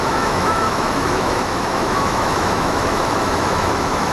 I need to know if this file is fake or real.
fake